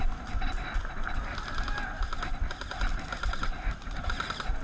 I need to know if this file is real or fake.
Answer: real